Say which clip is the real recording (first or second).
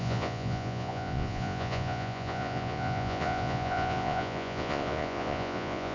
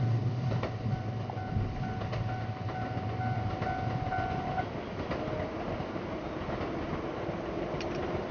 second